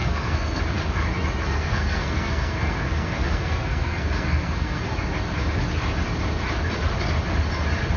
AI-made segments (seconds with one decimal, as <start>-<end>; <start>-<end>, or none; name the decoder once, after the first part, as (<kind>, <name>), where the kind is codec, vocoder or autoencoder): 0.0-0.6 (codec, SNAC); 1.4-4.8